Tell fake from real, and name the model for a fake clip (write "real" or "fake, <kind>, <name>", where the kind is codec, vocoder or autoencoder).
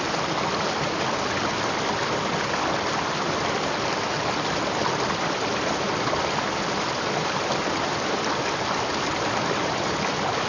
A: real